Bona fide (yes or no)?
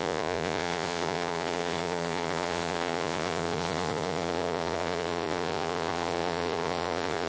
no